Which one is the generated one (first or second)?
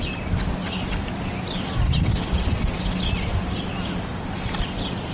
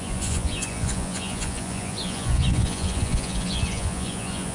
second